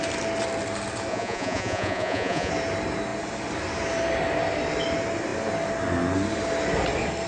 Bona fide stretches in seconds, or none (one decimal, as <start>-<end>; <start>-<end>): 0.0-1.1; 2.5-7.3